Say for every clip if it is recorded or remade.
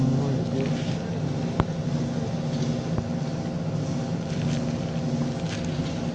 recorded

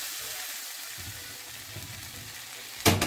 recorded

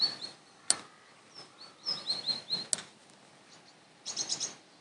recorded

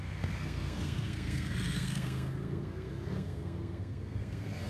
remade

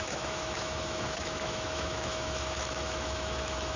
remade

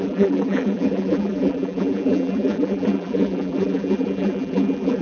remade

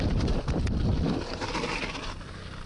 recorded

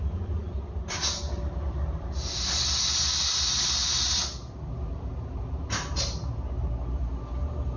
recorded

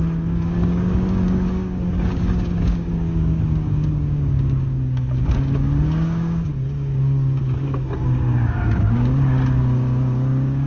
remade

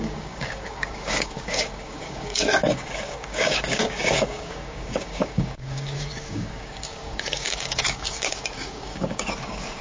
remade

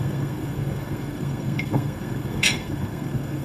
remade